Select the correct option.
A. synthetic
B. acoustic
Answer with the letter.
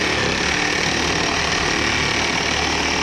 B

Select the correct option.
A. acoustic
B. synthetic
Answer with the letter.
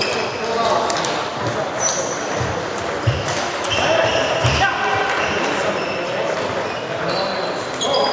A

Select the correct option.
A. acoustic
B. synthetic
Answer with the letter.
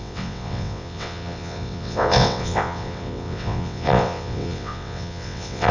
B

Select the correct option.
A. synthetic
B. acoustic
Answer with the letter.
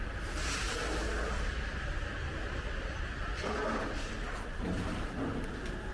B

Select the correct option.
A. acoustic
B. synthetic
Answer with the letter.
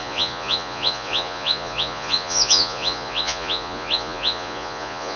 B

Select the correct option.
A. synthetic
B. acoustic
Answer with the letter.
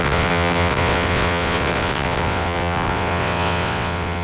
A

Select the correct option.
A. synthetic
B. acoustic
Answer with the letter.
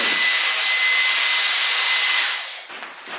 B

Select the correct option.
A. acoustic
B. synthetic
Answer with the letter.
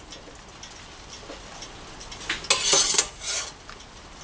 A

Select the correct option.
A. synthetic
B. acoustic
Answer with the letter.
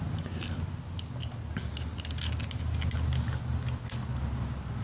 B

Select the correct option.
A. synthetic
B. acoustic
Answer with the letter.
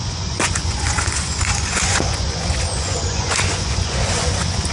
A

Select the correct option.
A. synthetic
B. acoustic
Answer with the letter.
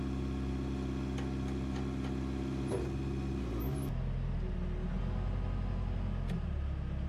B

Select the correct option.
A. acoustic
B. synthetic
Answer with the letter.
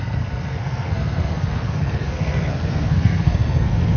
B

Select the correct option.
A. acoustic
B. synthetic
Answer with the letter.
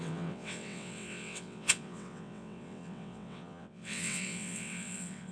B